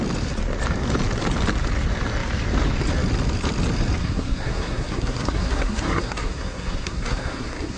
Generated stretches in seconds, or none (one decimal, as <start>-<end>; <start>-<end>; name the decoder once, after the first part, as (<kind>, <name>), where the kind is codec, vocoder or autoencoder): 4.0-7.8 (codec, SNAC)